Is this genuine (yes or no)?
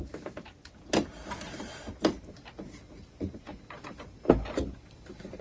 yes